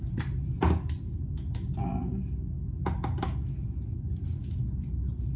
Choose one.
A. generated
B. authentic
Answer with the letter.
B